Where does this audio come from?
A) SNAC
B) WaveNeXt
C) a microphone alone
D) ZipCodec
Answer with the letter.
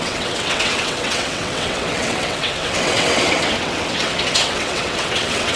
B